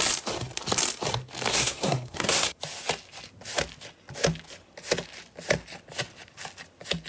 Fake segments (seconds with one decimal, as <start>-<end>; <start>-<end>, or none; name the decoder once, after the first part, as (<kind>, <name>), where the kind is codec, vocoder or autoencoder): 1.5-2.6 (codec, SNAC)